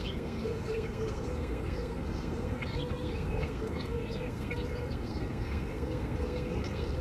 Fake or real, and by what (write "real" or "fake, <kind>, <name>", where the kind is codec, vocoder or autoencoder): fake, codec, SNAC